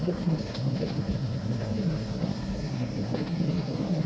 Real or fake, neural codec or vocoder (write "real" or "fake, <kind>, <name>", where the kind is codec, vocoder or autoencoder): fake, codec, SNAC